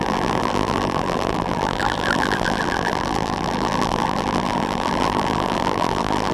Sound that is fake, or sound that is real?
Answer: fake